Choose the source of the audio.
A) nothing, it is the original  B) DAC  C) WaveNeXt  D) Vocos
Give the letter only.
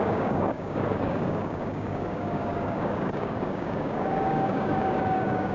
B